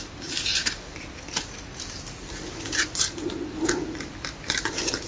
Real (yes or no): no